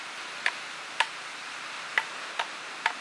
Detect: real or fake real